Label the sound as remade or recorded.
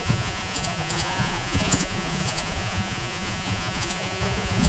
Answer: remade